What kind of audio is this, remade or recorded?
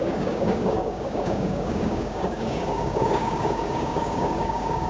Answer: remade